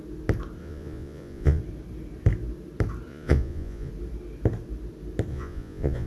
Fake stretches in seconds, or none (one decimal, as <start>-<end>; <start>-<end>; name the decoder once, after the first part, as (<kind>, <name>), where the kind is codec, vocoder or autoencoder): 0.6-1.6 (vocoder, Vocos); 3.1-3.9; 5.3-6.1